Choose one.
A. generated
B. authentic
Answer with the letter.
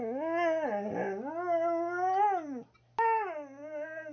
B